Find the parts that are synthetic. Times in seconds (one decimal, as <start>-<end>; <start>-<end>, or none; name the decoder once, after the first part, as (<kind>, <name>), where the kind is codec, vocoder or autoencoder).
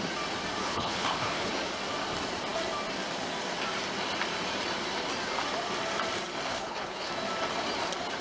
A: 0.6-1.5 (codec, HILCodec); 6.5-7.1